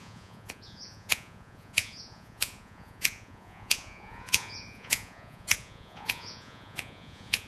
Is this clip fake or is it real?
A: fake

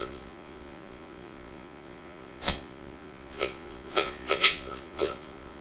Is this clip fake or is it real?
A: fake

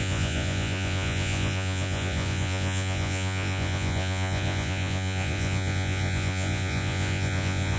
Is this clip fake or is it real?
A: fake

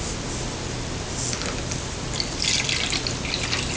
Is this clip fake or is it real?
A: real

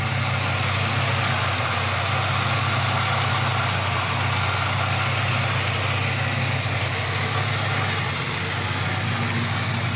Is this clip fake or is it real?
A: real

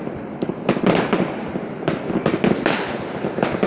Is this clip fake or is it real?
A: real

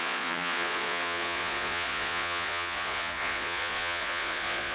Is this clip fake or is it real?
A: fake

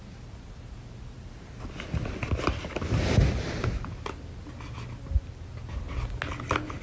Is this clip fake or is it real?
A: real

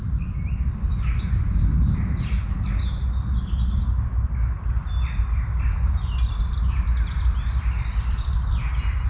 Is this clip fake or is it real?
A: real